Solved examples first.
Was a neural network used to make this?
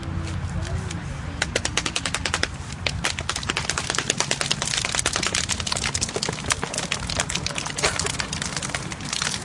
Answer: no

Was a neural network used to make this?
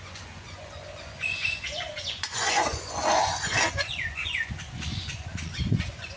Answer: yes